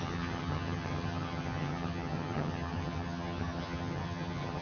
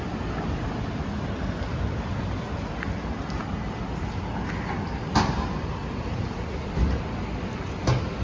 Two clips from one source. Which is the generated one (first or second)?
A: first